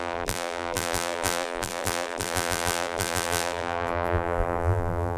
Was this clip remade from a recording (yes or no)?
yes